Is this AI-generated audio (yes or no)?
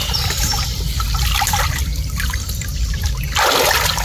no